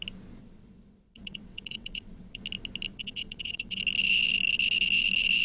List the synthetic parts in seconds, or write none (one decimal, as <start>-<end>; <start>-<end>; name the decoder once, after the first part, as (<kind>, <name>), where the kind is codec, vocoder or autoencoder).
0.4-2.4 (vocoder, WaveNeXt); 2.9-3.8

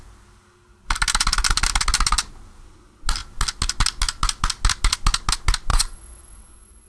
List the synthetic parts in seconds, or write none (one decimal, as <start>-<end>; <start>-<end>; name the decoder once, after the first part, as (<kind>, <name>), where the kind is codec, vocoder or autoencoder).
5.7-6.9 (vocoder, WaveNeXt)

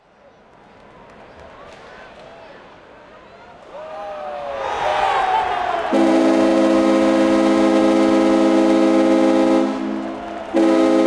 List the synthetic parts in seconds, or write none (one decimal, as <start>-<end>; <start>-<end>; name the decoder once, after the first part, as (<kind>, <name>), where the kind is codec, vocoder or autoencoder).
none

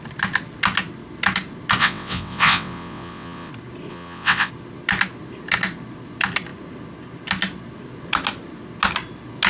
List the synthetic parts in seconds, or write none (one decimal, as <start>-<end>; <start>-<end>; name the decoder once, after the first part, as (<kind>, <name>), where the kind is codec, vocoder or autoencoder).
1.8-3.5 (vocoder, WaveNeXt); 3.9-4.5

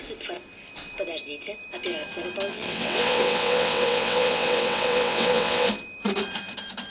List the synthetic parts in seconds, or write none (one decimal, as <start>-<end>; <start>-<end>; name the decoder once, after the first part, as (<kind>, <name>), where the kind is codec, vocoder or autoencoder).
2.5-5.7 (vocoder, WaveNeXt)